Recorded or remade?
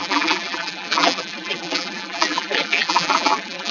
remade